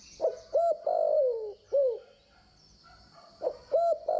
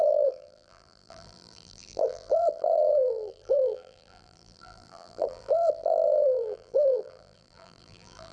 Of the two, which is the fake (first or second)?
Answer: second